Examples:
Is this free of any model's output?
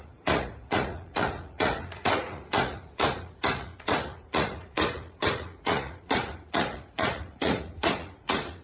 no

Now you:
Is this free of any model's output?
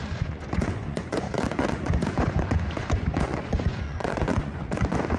no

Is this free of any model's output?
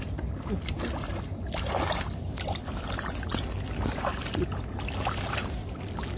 yes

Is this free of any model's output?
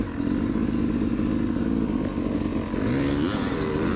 yes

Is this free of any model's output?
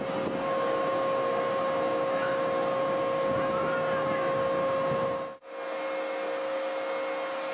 yes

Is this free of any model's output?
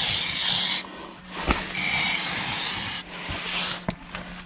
yes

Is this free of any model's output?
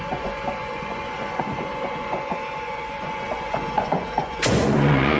no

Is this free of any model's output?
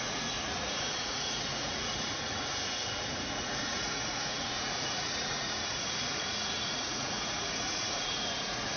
no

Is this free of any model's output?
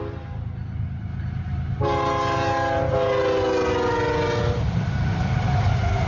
yes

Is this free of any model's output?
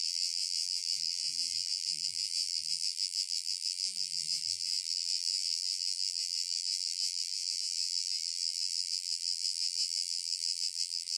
no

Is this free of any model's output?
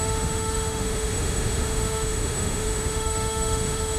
no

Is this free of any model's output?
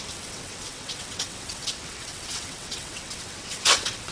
no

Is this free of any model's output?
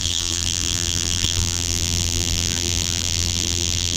no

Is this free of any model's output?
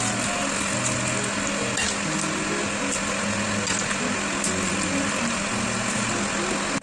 yes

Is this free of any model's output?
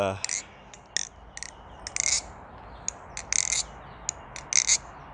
yes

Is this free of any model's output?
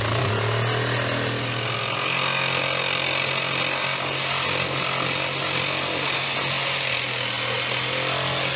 yes